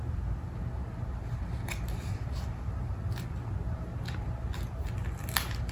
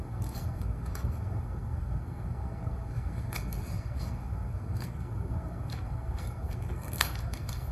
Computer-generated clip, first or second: second